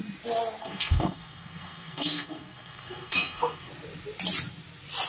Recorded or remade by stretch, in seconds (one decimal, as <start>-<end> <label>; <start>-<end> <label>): 0.0-0.6 recorded; 0.6-3.7 remade; 3.7-5.1 recorded